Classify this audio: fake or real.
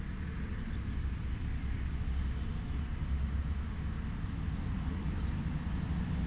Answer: real